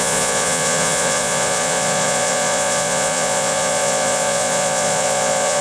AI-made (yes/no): yes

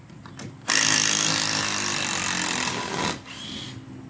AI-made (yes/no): no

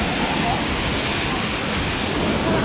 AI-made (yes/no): no